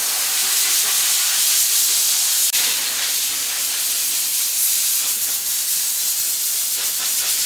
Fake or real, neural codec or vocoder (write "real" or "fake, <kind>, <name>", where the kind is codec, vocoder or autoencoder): fake, vocoder, BigVGAN v2